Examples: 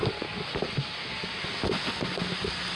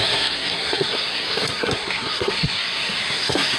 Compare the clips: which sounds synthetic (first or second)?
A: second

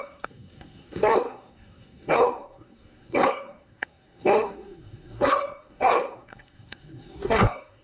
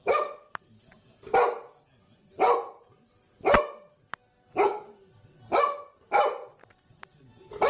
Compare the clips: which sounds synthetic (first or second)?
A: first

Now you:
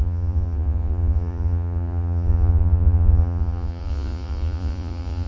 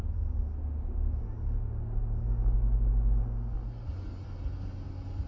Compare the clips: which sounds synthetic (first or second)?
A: first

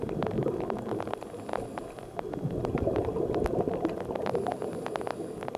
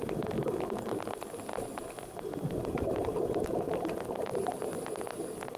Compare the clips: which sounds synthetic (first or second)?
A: second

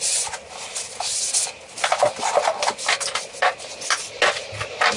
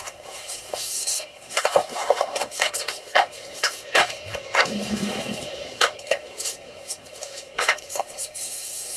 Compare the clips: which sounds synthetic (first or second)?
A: second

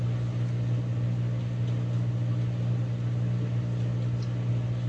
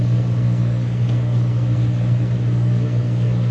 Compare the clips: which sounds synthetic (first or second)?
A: second